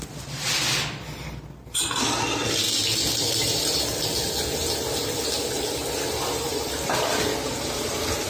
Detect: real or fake real